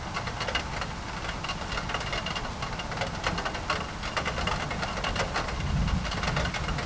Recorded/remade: recorded